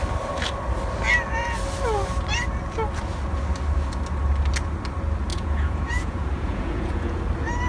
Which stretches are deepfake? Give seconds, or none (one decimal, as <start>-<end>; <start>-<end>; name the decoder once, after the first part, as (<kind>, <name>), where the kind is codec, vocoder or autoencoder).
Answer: 5.3-7.2 (vocoder, Vocos)